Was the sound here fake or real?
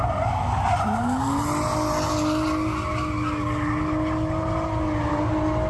real